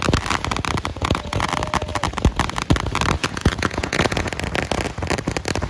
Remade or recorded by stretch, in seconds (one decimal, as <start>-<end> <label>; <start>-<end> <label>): 0.0-0.9 recorded; 0.9-1.5 remade; 1.5-3.2 recorded; 3.2-4.3 remade; 4.3-5.7 recorded